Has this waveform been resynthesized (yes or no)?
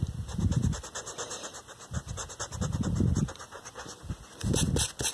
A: no